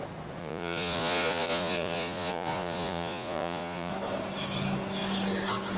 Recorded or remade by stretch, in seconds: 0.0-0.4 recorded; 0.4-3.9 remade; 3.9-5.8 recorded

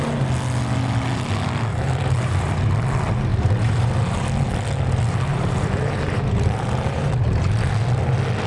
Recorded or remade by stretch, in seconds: 0.0-1.7 recorded; 1.7-2.7 remade; 2.7-3.3 recorded; 3.3-3.9 remade; 3.9-5.3 recorded; 5.3-7.1 remade; 7.1-8.5 recorded

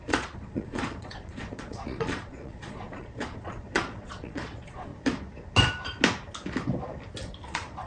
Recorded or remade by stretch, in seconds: 0.0-4.9 remade; 4.9-7.5 recorded; 7.5-7.9 remade

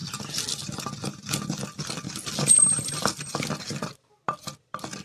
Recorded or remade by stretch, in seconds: 0.0-5.0 recorded

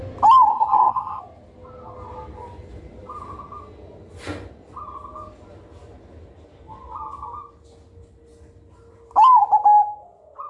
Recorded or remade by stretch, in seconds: 0.0-0.5 recorded; 0.5-1.2 remade; 1.2-10.5 recorded